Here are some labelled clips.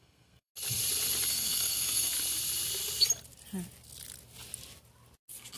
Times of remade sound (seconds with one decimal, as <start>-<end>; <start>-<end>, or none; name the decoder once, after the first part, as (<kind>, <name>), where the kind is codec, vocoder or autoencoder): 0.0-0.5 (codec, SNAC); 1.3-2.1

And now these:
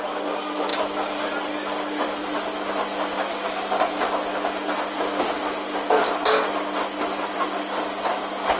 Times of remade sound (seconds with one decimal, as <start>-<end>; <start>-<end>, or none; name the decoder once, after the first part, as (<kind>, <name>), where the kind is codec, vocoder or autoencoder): none

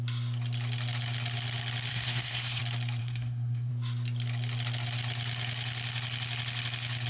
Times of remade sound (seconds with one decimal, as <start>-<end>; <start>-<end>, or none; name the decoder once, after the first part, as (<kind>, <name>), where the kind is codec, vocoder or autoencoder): 1.9-2.6 (codec, SNAC); 3.0-3.7

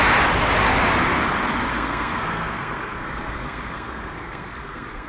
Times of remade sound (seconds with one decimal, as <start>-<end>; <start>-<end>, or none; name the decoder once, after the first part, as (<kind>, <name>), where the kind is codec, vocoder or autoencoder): 1.7-5.1 (codec, SNAC)

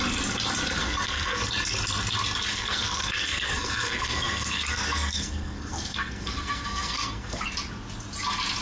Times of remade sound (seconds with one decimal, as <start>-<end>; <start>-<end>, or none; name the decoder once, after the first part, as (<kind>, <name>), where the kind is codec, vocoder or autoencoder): 0.8-1.4 (codec, SNAC); 2.5-7.4

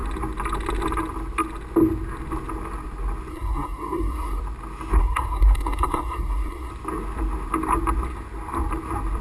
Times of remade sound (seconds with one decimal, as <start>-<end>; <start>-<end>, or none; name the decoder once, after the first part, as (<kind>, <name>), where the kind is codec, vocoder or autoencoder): 3.3-4.4 (codec, SNAC); 5.0-6.7

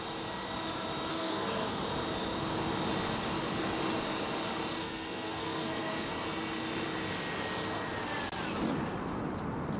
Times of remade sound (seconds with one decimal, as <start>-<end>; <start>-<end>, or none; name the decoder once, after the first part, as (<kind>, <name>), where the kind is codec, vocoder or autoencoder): 1.1-1.7 (codec, SNAC); 4.8-6.1

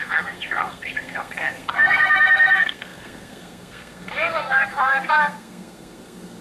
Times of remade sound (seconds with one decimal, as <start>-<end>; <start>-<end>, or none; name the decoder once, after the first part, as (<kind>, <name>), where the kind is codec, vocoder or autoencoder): 0.0-6.4 (codec, SNAC)